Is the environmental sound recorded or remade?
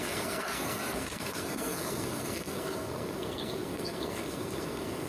remade